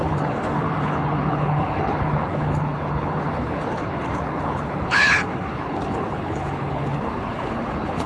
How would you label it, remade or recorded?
remade